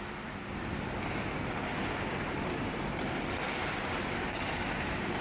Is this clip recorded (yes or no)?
yes